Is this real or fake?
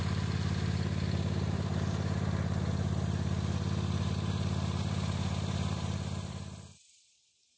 fake